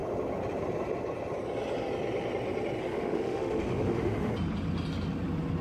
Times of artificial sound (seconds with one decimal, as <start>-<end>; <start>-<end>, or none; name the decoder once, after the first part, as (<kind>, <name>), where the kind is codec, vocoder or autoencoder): 2.8-4.3 (autoencoder, DAC-VAE)